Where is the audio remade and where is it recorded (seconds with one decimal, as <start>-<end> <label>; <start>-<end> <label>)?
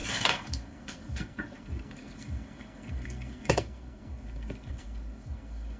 0.0-5.8 remade